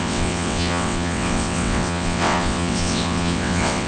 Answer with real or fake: fake